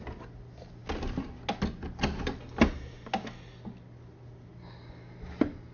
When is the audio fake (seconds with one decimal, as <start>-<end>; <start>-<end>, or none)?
none